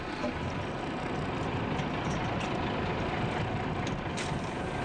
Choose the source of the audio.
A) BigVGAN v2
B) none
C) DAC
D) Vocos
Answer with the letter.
B